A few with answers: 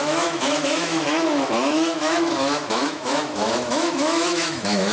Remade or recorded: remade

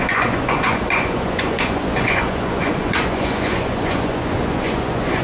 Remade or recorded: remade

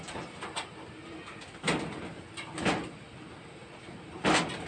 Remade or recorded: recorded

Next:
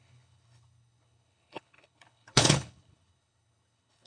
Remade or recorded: remade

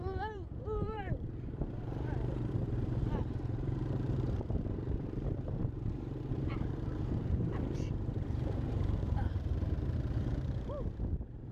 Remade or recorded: remade